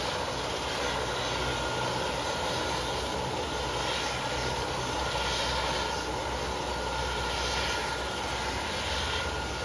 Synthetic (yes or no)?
no